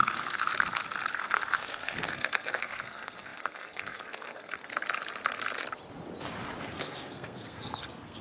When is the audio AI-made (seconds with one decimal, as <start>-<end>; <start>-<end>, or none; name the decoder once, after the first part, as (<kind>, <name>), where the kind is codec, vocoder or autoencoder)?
0.0-0.5 (codec, SNAC); 1.2-4.7; 6.6-8.2